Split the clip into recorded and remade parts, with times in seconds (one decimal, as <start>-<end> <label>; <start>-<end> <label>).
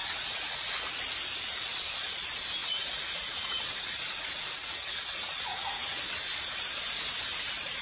0.0-0.9 remade; 0.9-2.6 recorded; 2.6-6.0 remade; 6.0-7.8 recorded